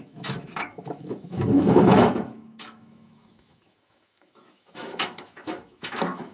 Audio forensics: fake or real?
fake